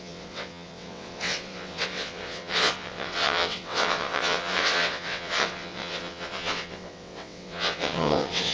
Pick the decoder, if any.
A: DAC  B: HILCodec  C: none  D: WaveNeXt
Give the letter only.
D